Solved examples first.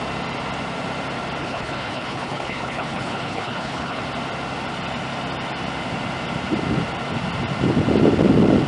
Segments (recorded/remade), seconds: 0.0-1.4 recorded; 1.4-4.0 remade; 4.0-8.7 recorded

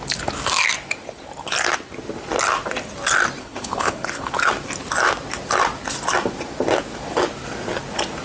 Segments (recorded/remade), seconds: 0.0-3.4 recorded; 3.4-4.3 remade; 4.3-8.2 recorded

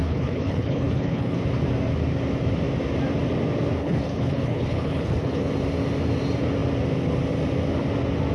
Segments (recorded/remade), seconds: 0.0-1.4 remade; 1.4-3.8 recorded; 3.8-5.5 remade; 5.5-8.3 recorded

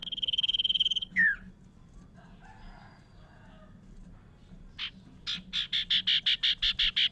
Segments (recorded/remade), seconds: 0.0-1.5 remade; 1.5-7.1 recorded

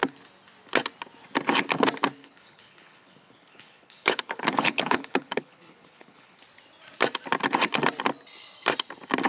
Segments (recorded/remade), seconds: 0.0-2.2 recorded; 2.2-6.4 remade; 6.4-9.3 recorded

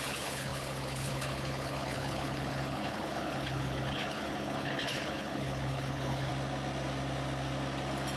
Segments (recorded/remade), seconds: 0.0-6.3 remade; 6.3-8.2 recorded